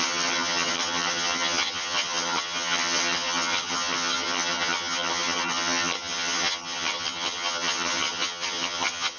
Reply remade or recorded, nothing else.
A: remade